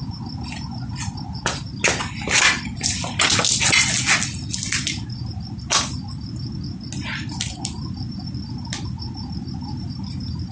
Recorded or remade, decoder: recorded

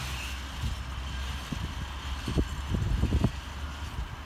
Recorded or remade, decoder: recorded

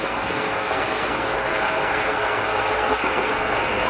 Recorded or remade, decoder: remade, codec, SNAC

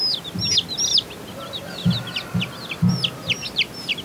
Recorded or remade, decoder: recorded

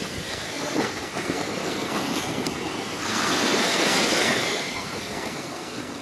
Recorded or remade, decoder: remade, codec, SNAC